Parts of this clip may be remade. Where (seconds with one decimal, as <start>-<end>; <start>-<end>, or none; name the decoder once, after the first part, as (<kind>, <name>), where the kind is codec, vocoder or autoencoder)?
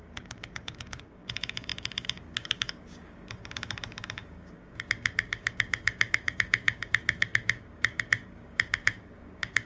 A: 0.0-9.7 (codec, DAC)